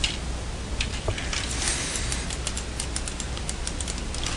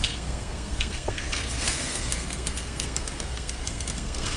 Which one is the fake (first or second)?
second